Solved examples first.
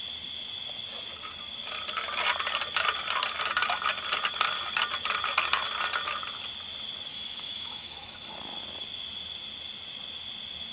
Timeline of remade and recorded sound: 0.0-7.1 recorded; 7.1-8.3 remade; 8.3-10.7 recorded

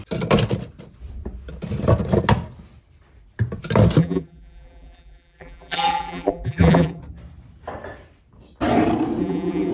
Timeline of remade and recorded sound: 0.0-4.0 recorded; 4.0-7.0 remade; 7.0-9.2 recorded; 9.2-9.7 remade

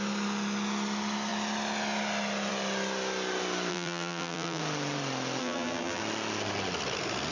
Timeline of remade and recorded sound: 0.0-3.7 recorded; 3.7-4.6 remade; 4.6-5.4 recorded; 5.4-6.0 remade; 6.0-7.3 recorded